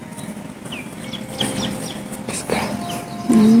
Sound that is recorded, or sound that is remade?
recorded